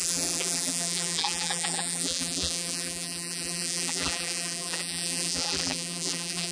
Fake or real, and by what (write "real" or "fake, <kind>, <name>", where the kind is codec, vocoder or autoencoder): fake, vocoder, BigVGAN v2